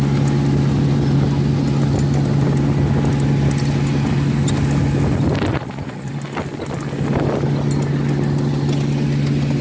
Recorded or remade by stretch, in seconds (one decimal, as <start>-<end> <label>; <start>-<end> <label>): 0.0-5.5 recorded; 5.5-6.1 remade; 6.1-9.6 recorded